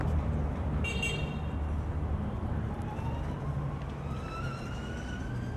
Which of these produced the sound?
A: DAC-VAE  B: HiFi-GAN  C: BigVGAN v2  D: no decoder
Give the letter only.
D